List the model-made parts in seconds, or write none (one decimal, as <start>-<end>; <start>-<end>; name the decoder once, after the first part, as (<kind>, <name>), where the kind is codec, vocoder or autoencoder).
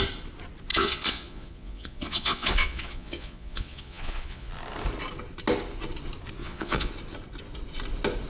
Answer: 0.7-4.5 (vocoder, Vocos); 6.4-6.9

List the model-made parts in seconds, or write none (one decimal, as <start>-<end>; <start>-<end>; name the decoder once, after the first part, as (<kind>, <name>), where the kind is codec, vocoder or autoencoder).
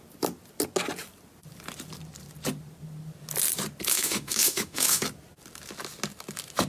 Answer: 3.9-5.0 (autoencoder, DAC-VAE)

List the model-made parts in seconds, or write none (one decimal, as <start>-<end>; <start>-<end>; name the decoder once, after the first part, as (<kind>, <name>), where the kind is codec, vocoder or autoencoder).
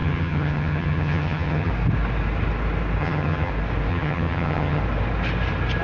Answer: 0.0-1.7 (vocoder, HiFi-GAN); 3.0-3.5; 3.9-4.8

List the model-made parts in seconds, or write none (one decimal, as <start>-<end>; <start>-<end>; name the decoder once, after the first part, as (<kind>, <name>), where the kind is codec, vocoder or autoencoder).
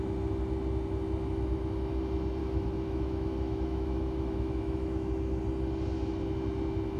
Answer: 2.4-5.4 (autoencoder, DAC-VAE)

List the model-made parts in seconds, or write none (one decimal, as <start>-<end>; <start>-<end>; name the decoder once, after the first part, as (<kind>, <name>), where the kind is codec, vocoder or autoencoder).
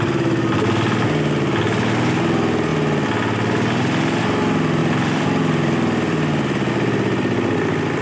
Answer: 4.8-6.7 (vocoder, BigVGAN v2)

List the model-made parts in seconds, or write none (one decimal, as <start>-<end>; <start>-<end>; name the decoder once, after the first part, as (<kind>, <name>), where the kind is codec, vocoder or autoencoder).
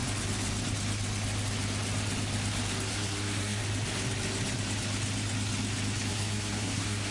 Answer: 2.9-3.6 (codec, SNAC); 6.1-7.1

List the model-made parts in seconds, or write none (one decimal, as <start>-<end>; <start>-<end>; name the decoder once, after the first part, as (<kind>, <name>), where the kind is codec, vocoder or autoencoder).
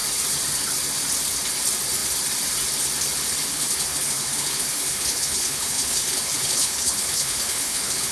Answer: 3.5-8.1 (codec, HILCodec)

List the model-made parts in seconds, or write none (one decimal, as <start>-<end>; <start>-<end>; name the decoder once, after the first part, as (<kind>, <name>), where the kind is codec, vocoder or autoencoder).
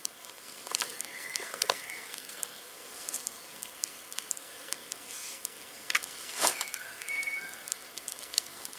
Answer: 0.0-8.8 (codec, SNAC)